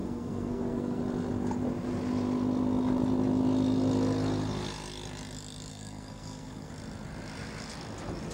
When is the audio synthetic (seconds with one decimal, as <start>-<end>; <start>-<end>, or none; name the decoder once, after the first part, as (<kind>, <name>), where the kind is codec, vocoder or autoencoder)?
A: 0.0-1.0 (codec, SNAC); 5.7-6.7